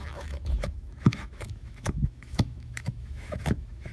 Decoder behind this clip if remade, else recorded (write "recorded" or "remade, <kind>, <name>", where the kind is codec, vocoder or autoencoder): remade, autoencoder, DAC-VAE